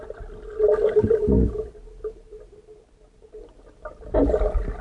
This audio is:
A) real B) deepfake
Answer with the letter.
A